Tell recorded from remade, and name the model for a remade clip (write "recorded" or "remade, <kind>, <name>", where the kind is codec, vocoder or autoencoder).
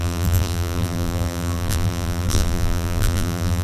remade, vocoder, BigVGAN v2